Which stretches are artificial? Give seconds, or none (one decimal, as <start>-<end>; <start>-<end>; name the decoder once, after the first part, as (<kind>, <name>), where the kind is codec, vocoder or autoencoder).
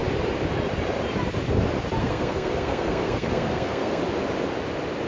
2.0-4.0 (codec, SNAC)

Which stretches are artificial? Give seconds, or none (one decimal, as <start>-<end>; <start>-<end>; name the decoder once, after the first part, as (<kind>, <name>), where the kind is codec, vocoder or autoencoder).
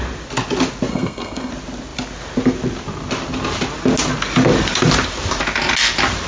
0.9-1.5 (codec, SNAC)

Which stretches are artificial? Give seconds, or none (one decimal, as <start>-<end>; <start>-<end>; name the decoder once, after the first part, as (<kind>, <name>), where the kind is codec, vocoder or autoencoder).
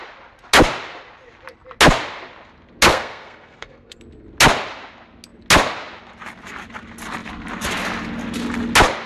2.9-4.0 (codec, SNAC)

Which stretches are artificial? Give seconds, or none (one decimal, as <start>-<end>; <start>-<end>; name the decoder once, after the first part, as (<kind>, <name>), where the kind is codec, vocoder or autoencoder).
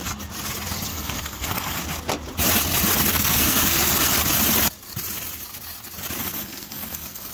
0.9-1.8 (codec, SNAC); 3.0-4.2; 6.2-7.3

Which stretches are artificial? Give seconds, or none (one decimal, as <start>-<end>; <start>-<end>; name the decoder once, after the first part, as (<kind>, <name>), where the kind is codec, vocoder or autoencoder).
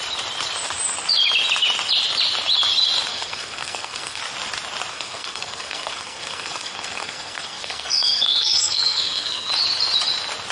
3.1-4.2 (codec, SNAC); 4.9-9.5